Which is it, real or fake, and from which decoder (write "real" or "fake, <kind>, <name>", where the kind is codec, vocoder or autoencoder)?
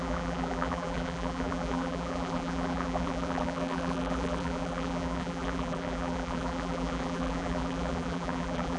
fake, vocoder, BigVGAN v2